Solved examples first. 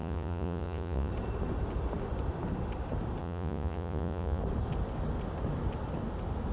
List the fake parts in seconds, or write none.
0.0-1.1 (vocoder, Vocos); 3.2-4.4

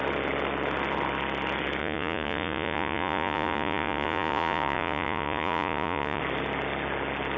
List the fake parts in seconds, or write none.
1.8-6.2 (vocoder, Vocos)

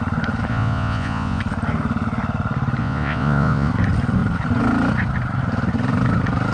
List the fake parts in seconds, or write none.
0.5-1.4 (vocoder, Vocos); 2.8-3.7